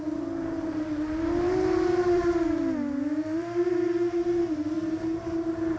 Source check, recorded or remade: remade